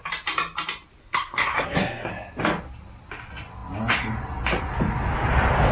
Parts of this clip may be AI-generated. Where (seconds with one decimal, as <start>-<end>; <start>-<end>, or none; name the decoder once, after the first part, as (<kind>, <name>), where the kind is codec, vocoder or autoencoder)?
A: 1.0-2.1 (codec, SNAC)